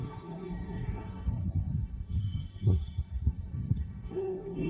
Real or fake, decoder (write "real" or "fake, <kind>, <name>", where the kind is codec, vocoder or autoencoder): fake, codec, SNAC